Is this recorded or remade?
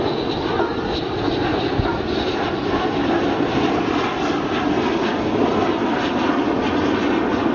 recorded